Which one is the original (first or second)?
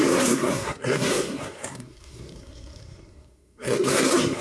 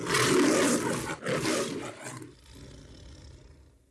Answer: second